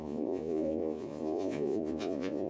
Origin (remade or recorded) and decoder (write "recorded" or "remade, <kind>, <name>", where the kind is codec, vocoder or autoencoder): remade, vocoder, Vocos